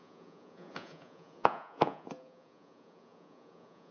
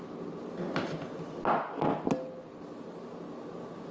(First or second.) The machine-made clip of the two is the first